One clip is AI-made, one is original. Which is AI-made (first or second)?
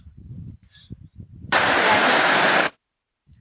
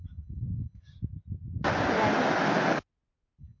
first